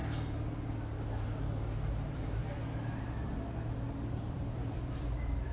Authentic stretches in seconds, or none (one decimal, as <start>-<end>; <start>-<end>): 0.0-1.9; 2.4-4.1